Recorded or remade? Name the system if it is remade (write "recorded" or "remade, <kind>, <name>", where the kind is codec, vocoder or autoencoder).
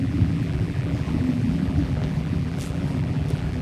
remade, vocoder, BigVGAN v2